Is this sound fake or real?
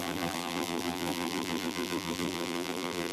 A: fake